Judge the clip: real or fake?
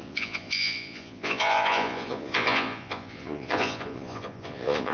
fake